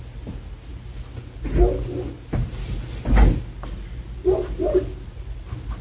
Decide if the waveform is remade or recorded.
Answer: recorded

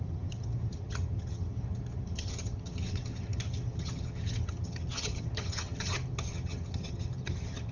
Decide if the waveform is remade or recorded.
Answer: remade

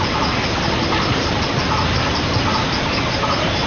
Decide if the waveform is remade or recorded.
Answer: recorded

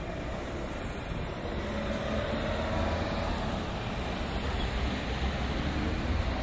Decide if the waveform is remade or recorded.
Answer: recorded